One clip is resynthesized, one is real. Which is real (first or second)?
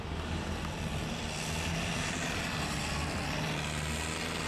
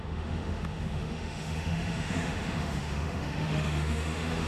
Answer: first